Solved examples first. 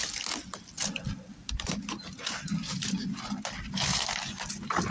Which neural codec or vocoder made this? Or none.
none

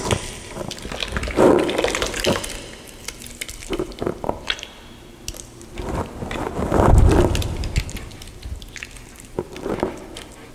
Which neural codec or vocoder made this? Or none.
none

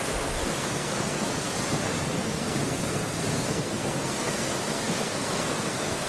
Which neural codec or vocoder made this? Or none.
codec, SNAC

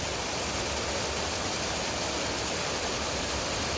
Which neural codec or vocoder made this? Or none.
none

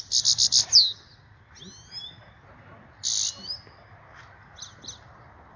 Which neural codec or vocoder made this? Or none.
none